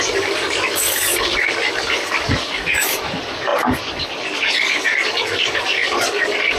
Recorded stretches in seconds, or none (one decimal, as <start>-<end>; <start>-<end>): none